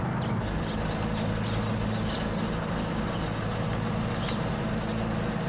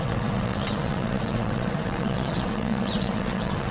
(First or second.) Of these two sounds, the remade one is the second